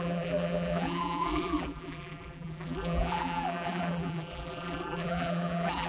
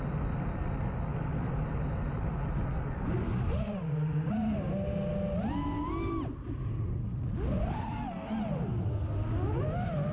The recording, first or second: second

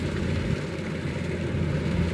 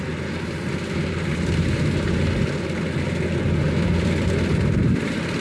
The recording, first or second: second